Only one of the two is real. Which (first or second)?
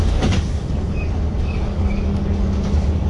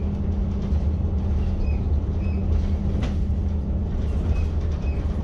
second